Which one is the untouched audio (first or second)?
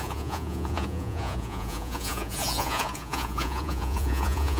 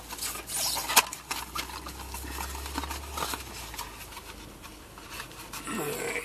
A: second